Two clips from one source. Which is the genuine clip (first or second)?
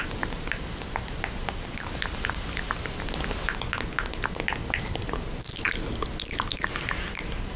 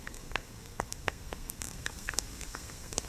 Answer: first